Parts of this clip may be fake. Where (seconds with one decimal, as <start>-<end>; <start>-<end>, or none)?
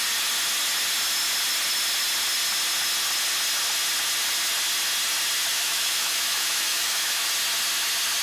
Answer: 5.5-7.3